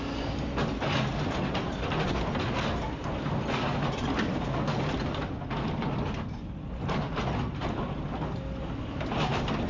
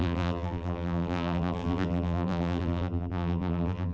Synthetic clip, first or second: second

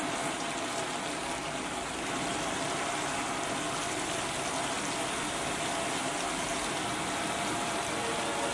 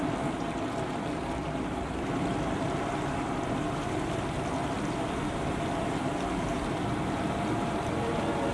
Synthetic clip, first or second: second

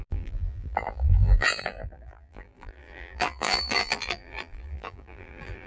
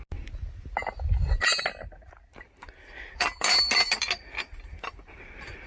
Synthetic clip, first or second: first